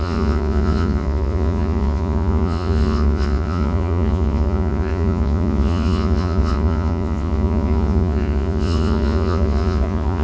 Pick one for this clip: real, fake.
fake